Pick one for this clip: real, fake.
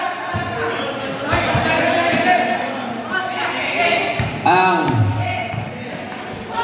real